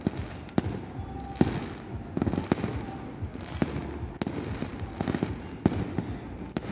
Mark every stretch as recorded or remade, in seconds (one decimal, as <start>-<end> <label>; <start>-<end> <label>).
0.0-6.7 recorded